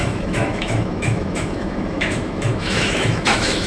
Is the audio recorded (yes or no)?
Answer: no